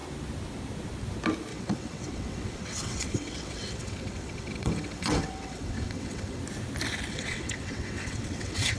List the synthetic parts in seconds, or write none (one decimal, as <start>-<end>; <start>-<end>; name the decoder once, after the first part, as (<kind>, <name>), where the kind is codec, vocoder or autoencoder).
1.5-6.4 (vocoder, WaveNeXt); 7.1-8.8